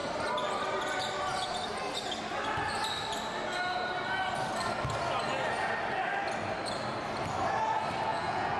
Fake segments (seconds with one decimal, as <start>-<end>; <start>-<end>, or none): 8.1-8.6